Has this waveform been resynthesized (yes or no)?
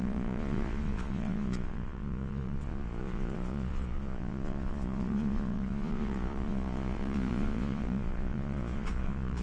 yes